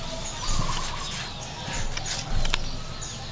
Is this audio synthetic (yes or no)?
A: no